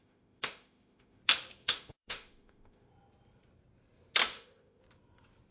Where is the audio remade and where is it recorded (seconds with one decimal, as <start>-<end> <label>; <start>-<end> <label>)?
0.0-1.2 remade; 1.2-1.6 recorded; 1.6-2.9 remade; 2.9-4.3 recorded; 4.3-4.8 remade; 4.8-5.5 recorded